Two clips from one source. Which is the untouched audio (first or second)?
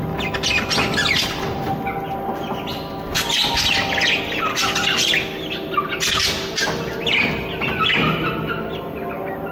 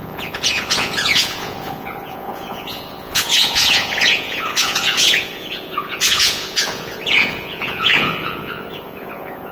first